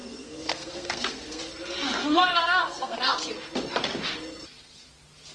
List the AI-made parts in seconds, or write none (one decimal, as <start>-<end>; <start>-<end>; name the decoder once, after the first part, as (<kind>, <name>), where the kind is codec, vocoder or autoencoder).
0.0-1.4 (codec, SNAC); 2.0-3.2